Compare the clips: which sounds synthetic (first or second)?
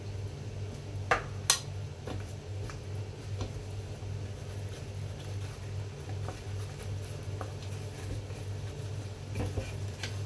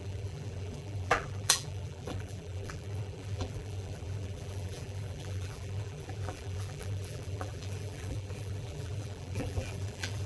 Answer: second